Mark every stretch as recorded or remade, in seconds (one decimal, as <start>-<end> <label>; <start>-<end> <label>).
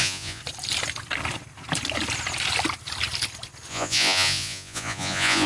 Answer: 0.0-0.4 remade; 0.4-3.7 recorded; 3.7-5.5 remade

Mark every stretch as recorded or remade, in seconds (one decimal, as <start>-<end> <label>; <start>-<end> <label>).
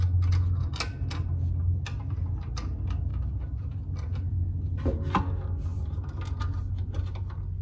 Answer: 0.0-3.1 recorded; 3.1-3.8 remade; 3.8-7.6 recorded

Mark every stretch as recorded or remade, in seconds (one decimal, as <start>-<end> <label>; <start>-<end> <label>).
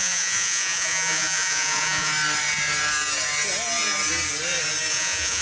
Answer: 0.0-2.1 remade; 2.1-4.9 recorded; 4.9-5.4 remade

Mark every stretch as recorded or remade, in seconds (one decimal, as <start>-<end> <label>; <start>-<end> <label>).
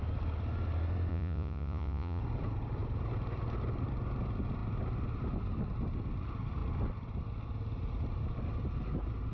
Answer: 0.0-1.1 recorded; 1.1-2.2 remade; 2.2-9.3 recorded